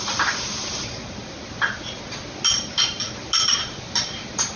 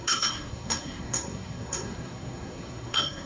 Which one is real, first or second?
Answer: first